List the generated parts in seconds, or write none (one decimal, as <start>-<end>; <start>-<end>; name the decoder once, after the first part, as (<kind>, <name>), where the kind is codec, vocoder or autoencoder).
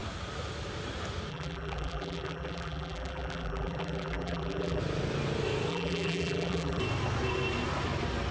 1.3-4.8 (vocoder, BigVGAN v2); 5.7-6.8